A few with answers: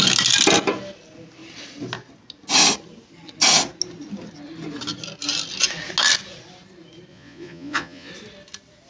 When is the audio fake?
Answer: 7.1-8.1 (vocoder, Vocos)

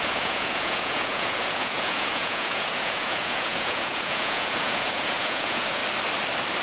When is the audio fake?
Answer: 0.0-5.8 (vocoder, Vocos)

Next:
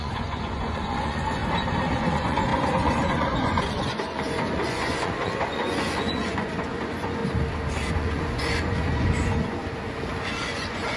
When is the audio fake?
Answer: 0.0-1.4 (vocoder, Vocos); 1.9-7.2; 7.9-9.6; 10.2-11.0

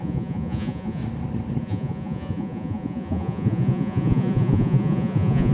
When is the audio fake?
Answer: 0.0-1.0 (vocoder, Vocos); 1.6-5.5